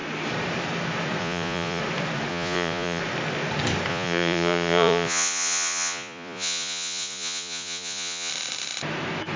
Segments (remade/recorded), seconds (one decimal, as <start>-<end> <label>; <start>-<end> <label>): 0.0-1.2 recorded; 1.2-1.8 remade; 1.8-2.3 recorded; 2.3-3.0 remade; 3.0-3.9 recorded; 3.9-8.3 remade; 8.3-9.4 recorded